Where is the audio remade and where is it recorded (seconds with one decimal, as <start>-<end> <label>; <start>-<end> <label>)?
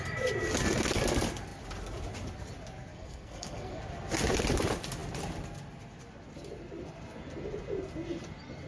0.0-2.9 recorded; 2.9-3.8 remade; 3.8-8.7 recorded